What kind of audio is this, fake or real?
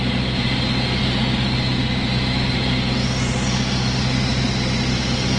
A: real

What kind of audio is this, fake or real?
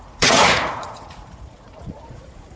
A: fake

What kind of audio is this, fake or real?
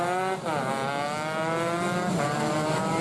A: real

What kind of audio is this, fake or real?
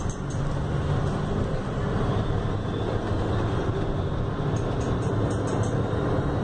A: real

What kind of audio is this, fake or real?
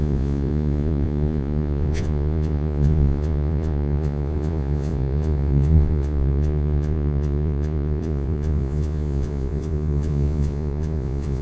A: fake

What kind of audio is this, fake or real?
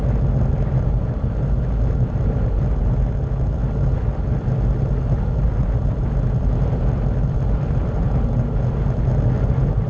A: real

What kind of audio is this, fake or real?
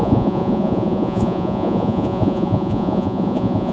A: fake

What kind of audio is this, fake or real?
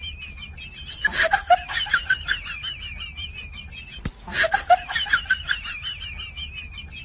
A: real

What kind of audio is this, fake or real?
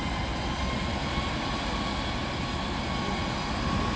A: real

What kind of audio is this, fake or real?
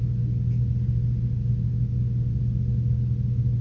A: real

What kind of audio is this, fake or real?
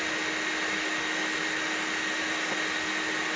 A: real